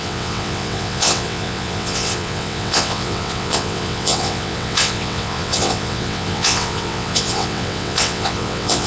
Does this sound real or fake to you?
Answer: fake